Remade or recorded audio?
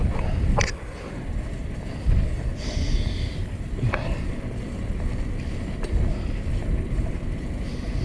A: recorded